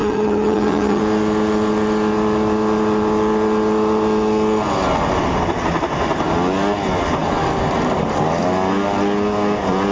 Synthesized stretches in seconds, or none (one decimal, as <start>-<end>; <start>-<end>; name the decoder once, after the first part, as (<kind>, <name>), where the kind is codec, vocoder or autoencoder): 0.0-1.0 (vocoder, HiFi-GAN)